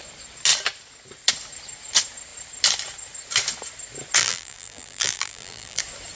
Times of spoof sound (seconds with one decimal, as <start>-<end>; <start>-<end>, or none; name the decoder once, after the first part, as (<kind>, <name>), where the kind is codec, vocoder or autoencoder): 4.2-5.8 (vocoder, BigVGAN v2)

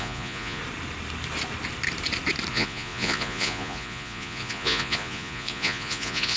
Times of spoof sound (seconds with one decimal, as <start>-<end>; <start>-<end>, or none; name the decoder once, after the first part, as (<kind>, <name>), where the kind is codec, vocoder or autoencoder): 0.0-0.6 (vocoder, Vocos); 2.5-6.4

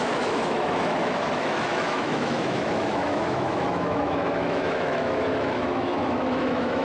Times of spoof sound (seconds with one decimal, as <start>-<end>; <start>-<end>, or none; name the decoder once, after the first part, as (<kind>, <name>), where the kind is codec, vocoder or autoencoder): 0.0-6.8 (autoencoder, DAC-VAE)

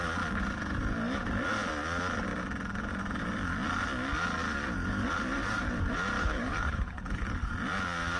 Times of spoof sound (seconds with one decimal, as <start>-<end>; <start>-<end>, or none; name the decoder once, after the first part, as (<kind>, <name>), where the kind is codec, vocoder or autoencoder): 6.2-7.5 (codec, HILCodec)